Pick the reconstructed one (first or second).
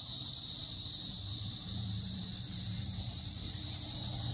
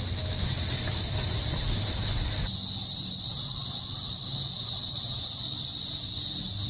first